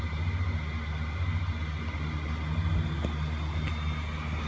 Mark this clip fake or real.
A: real